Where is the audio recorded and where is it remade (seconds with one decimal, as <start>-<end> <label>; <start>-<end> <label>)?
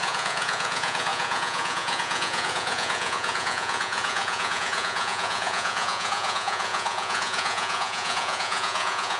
0.0-9.2 remade